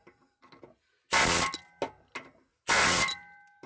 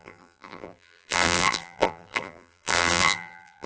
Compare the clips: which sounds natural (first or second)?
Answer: first